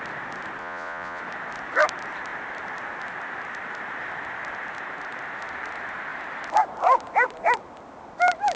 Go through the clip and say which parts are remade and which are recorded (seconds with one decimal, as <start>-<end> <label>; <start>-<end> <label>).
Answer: 0.0-0.6 recorded; 0.6-1.2 remade; 1.2-8.6 recorded